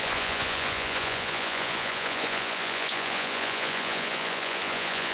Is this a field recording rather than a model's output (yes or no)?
no